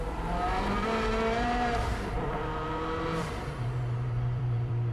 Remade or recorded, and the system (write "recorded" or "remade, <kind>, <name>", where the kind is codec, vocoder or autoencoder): remade, vocoder, BigVGAN v2